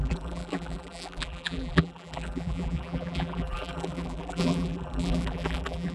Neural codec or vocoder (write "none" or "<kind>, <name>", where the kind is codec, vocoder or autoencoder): vocoder, BigVGAN v2